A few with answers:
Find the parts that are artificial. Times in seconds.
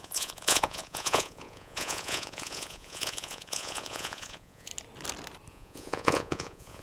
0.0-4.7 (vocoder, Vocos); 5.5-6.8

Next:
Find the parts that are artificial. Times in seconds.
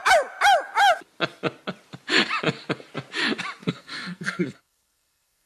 3.6-5.5 (codec, SNAC)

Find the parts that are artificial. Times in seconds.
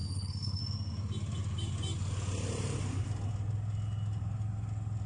0.0-0.6 (codec, HILCodec)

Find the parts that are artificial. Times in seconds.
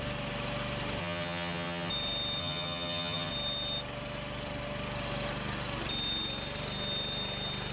1.0-1.9 (vocoder, HiFi-GAN); 2.4-3.3